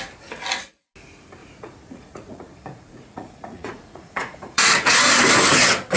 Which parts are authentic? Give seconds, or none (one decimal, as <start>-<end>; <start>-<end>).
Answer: 0.0-1.4; 5.0-6.0